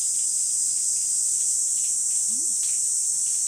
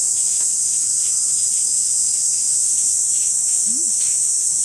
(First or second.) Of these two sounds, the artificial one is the second